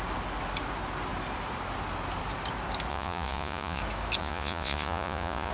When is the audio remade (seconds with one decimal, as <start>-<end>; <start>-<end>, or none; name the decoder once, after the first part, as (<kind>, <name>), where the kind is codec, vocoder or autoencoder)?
2.9-3.8 (vocoder, Vocos); 4.2-5.5